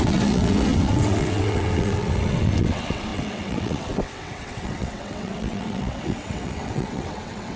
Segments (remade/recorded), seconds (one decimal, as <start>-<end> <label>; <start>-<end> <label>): 0.0-7.6 remade